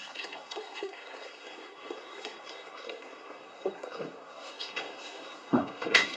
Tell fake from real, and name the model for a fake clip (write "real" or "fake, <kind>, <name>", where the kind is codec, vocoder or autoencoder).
fake, codec, SNAC